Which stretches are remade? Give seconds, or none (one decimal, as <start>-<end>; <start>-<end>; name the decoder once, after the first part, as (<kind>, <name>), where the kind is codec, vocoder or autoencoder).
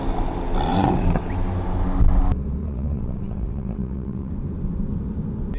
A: 0.7-1.3 (vocoder, WaveNeXt); 2.6-4.3